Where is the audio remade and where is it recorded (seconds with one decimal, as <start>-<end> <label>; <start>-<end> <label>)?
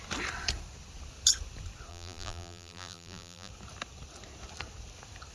0.0-1.9 recorded; 1.9-3.5 remade; 3.5-5.3 recorded